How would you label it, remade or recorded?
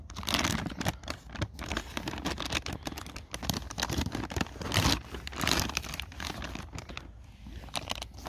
recorded